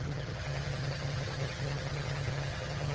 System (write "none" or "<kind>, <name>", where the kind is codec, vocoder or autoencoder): vocoder, HiFi-GAN